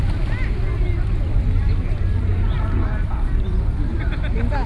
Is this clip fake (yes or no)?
no